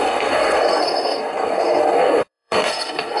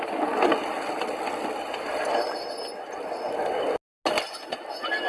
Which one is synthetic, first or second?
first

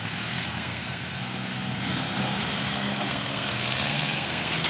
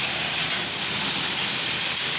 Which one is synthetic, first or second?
first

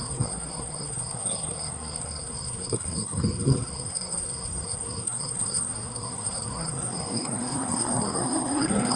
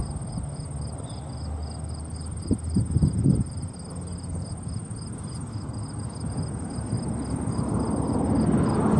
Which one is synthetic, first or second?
first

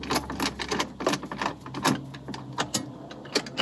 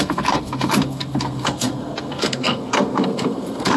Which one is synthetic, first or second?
second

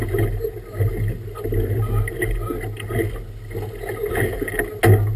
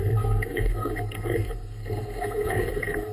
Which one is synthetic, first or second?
second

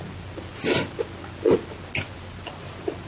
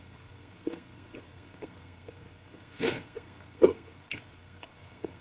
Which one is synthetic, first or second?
second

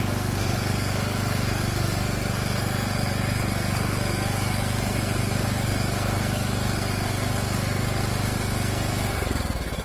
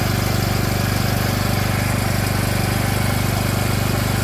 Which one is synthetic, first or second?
first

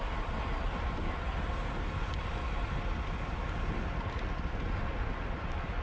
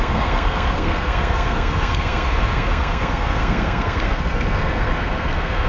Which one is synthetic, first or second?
second